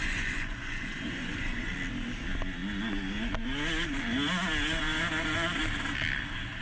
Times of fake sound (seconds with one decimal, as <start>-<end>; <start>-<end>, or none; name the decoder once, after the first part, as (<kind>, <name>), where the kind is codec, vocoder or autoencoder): 0.0-1.7 (vocoder, Vocos)